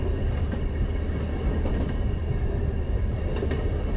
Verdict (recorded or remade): recorded